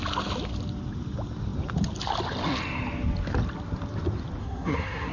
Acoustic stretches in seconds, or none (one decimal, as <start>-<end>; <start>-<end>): 0.0-4.4